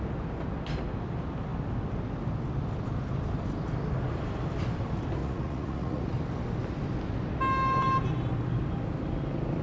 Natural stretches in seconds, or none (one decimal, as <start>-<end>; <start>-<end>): 0.0-5.2; 6.0-9.6

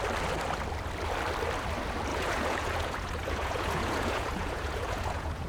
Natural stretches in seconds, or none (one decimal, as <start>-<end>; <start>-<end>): 0.0-2.1

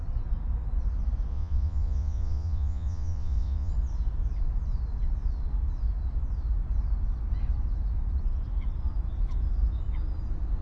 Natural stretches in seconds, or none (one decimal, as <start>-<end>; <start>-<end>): 0.0-1.3; 3.7-10.6

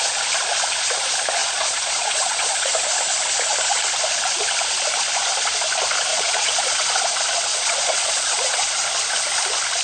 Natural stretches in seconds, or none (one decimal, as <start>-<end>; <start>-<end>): 0.0-1.4; 2.7-6.1; 7.0-7.5; 8.7-9.8

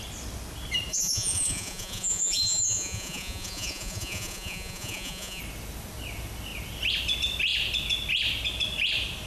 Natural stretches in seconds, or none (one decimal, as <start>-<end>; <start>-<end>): 0.0-0.9; 5.4-9.3

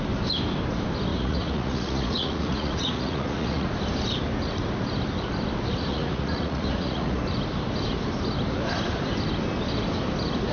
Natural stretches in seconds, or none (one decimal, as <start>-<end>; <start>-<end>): 0.0-1.1; 3.7-5.9; 7.2-10.5

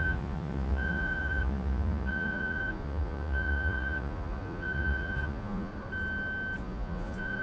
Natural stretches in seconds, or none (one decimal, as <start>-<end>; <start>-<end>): 5.7-6.6